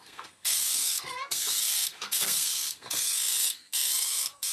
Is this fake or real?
fake